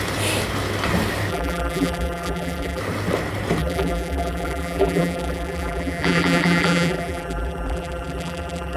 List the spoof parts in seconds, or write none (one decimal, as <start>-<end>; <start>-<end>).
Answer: 1.3-2.8; 3.6-8.8